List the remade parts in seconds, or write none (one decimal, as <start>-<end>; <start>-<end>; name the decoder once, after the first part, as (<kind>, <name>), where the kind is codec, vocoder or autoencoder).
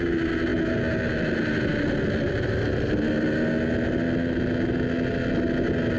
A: none